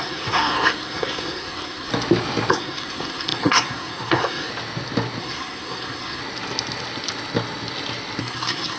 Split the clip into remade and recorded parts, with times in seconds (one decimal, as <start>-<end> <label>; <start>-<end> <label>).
0.0-1.9 remade; 1.9-2.5 recorded; 2.5-4.5 remade; 4.5-5.2 recorded; 5.2-6.2 remade; 6.2-8.2 recorded; 8.2-8.8 remade